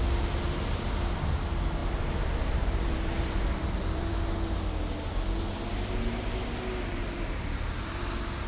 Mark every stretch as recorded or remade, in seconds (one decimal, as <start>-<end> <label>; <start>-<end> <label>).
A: 0.0-1.8 recorded; 1.8-4.1 remade; 4.1-8.5 recorded

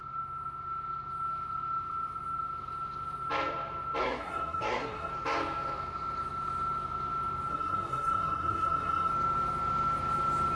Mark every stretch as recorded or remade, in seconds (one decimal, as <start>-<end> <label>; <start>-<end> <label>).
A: 0.0-4.0 recorded; 4.0-5.1 remade; 5.1-7.5 recorded; 7.5-9.1 remade; 9.1-10.6 recorded

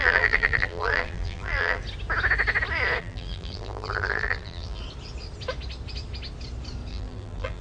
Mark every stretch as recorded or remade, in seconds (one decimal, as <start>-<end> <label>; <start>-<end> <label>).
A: 0.0-1.8 remade; 1.8-3.0 recorded; 3.0-4.8 remade; 4.8-6.9 recorded; 6.9-7.6 remade

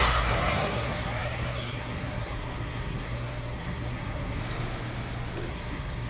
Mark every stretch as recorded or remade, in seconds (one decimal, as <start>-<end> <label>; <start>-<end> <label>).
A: 0.0-4.4 remade; 4.4-5.5 recorded; 5.5-6.1 remade